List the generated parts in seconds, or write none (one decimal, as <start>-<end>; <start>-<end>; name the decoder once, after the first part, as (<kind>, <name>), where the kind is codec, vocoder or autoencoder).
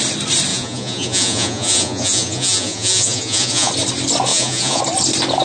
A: 0.5-3.7 (vocoder, Vocos); 4.3-4.8